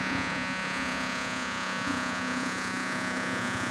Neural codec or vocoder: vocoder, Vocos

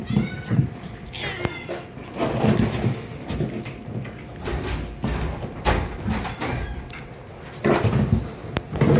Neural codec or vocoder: none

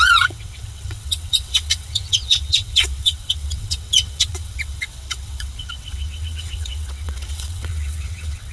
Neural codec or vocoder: vocoder, WaveNeXt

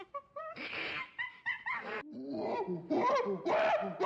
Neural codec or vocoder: none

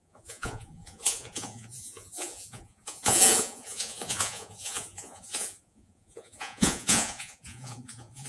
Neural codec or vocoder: vocoder, Vocos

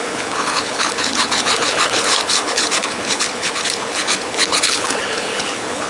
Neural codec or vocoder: codec, HILCodec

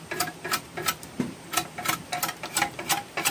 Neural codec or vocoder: none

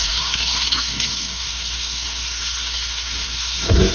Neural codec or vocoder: codec, SNAC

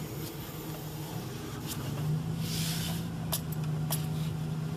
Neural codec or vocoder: none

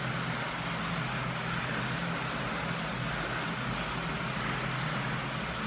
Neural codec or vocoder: none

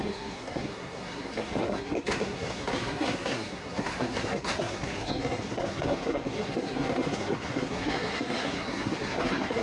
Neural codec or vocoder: codec, SNAC